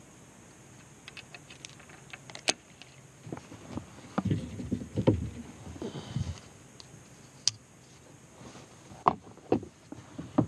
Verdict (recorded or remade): recorded